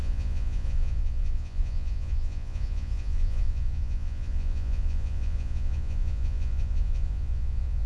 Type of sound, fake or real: fake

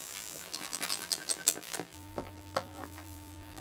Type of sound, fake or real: fake